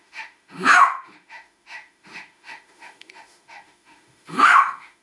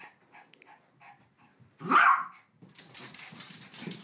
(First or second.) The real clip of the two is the second